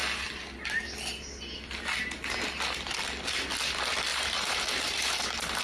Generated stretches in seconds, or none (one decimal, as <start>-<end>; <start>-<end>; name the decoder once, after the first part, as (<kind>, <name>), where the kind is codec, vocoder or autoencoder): 4.1-5.6 (vocoder, BigVGAN v2)